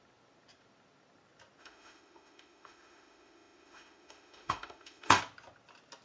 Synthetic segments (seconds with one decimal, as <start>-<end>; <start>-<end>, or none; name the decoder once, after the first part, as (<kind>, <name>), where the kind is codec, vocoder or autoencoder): 1.6-5.2 (autoencoder, DAC-VAE)